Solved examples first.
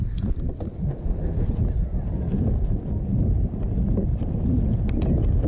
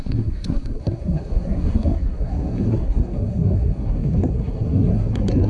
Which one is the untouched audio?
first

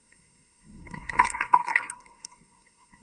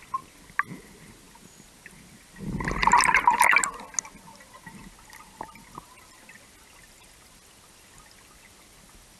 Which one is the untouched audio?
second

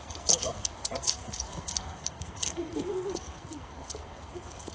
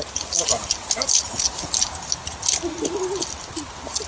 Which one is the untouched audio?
second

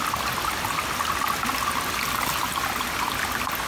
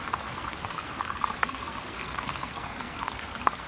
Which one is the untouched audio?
first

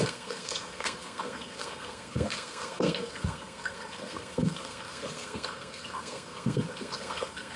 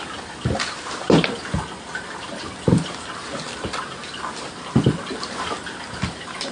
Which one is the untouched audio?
second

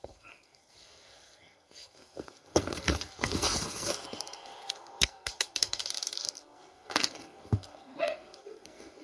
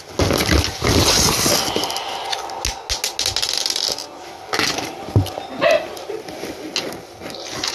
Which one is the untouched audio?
second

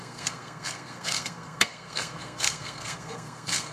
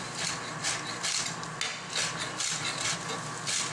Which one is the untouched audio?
second